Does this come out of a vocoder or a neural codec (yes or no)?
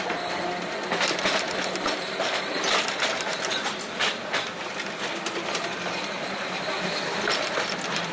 no